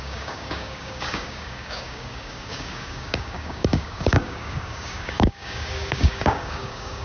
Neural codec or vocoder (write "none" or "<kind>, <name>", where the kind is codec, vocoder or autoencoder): codec, DAC